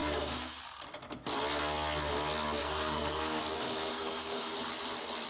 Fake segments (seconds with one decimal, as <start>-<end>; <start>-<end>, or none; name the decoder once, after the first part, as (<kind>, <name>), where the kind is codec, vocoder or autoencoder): 0.0-0.6 (codec, SNAC); 2.6-3.4; 3.9-4.5